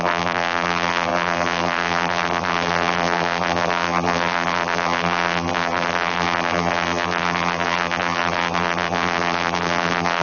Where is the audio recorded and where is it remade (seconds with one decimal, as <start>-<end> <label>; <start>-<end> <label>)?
0.0-10.2 remade